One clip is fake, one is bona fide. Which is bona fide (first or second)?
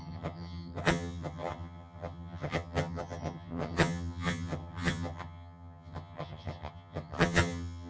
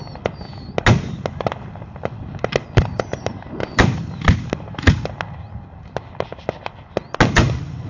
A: second